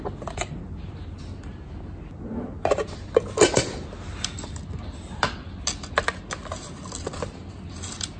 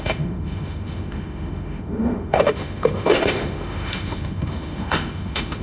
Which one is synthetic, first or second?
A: second